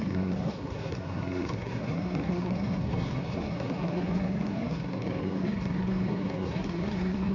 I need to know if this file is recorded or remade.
remade